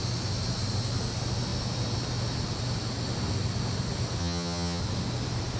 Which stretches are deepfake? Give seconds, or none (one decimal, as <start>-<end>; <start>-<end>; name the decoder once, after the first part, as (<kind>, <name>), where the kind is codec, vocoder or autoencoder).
4.2-4.8 (vocoder, HiFi-GAN)